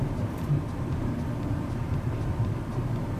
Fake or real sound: real